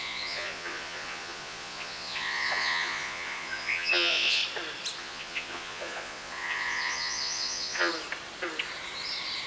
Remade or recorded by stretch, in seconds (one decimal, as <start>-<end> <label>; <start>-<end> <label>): 0.0-4.4 remade; 4.4-5.0 recorded; 5.0-7.9 remade; 7.9-9.5 recorded